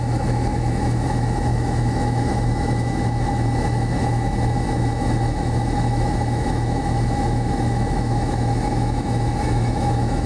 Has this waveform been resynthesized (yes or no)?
yes